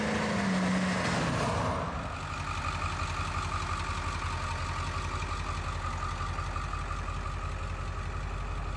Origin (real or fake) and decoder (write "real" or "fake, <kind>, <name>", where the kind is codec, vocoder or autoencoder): real